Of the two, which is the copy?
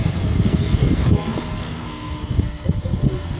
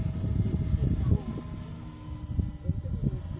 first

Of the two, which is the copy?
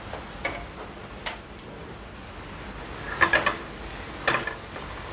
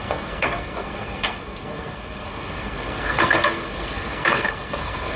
second